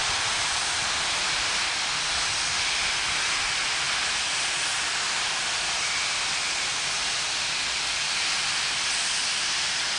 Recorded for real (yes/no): yes